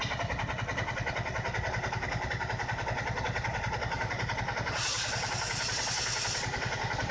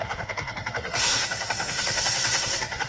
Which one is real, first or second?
first